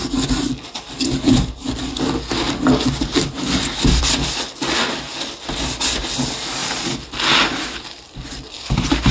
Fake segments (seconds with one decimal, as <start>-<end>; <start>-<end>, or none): none